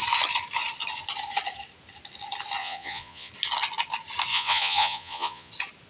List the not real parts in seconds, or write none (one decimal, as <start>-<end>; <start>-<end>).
2.6-3.3; 4.3-5.5